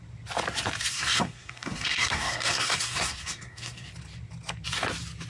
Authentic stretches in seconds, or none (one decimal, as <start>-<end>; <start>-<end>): 0.0-0.9; 3.9-5.3